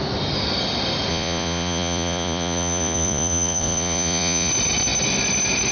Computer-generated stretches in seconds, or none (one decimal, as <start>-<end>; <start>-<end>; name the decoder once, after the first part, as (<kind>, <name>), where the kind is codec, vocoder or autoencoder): 1.1-4.5 (vocoder, Vocos)